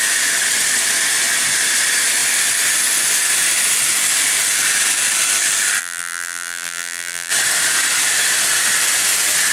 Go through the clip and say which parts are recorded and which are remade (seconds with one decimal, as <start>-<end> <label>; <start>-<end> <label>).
0.0-5.8 recorded; 5.8-7.3 remade; 7.3-9.5 recorded